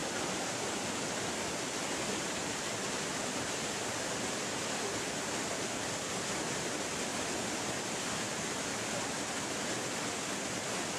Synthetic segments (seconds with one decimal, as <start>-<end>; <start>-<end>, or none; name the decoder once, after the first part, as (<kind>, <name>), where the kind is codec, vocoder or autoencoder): 0.0-1.5 (vocoder, BigVGAN v2); 3.1-4.0; 7.1-7.9; 8.7-11.0